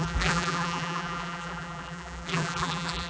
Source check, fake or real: fake